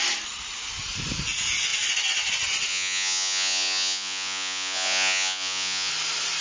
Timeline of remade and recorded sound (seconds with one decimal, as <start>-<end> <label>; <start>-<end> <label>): 0.0-2.7 recorded; 2.7-5.9 remade; 5.9-6.4 recorded